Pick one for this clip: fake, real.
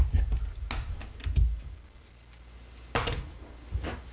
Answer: real